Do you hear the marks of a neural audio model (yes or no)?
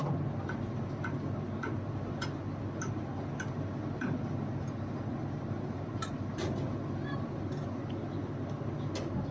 no